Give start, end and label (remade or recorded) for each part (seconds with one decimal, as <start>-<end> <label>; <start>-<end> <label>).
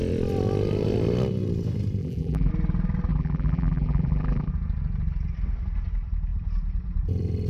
0.0-2.0 recorded; 2.0-2.5 remade; 2.5-3.1 recorded; 3.1-4.5 remade; 4.5-7.5 recorded